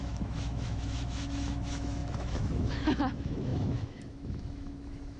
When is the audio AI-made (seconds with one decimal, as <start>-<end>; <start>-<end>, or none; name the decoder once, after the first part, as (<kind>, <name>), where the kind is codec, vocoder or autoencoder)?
0.0-5.2 (autoencoder, DAC-VAE)